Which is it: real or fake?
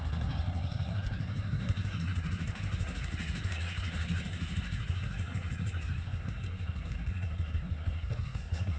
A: fake